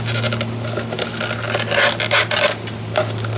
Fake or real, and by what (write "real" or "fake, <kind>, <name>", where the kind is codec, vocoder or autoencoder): real